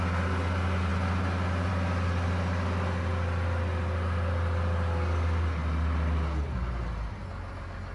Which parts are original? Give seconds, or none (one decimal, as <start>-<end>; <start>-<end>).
0.0-7.9